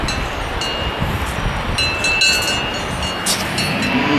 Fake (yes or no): no